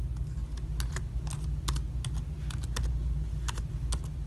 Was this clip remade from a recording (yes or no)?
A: no